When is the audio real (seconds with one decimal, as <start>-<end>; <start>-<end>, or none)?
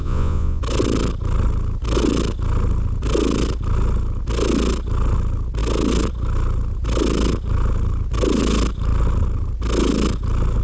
0.6-10.6